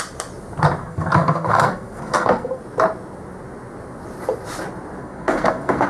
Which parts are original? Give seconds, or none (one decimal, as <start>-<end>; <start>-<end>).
0.0-0.8; 2.6-5.0